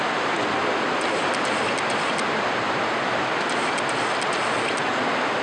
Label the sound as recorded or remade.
recorded